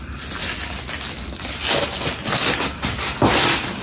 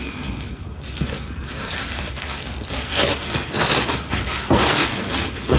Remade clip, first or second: second